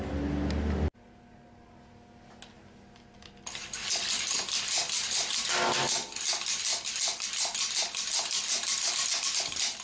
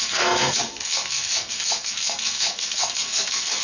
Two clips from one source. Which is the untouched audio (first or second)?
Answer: first